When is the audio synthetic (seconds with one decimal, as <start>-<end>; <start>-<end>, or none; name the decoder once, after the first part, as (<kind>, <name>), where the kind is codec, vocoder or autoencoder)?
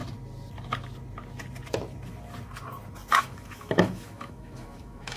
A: 3.1-5.2 (autoencoder, DAC-VAE)